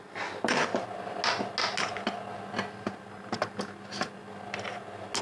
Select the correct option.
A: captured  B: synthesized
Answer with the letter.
A